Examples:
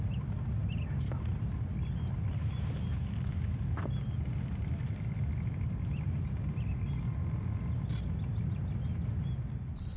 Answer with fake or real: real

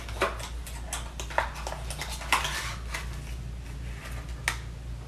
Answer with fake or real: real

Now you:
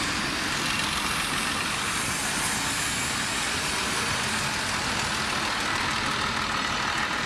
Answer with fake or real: real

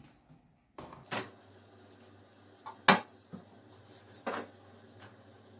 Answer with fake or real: real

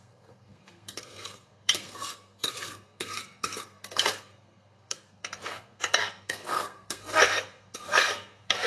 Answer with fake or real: fake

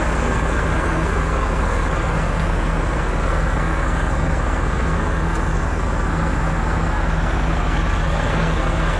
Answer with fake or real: fake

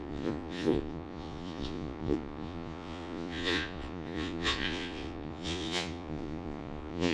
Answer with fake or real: fake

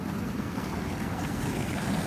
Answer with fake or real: fake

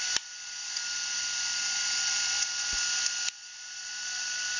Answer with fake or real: real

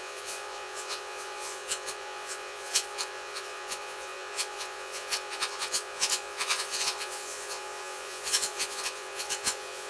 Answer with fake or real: fake